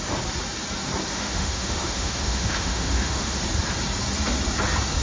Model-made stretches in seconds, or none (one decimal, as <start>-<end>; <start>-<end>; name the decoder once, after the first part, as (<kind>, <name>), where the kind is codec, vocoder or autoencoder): 1.1-3.4 (autoencoder, DAC-VAE)